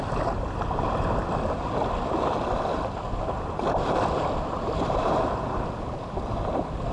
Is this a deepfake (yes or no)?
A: no